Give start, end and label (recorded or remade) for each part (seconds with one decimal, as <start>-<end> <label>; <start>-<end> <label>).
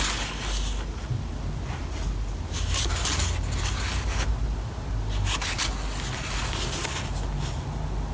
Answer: 0.0-4.3 recorded; 4.3-4.9 remade; 4.9-8.1 recorded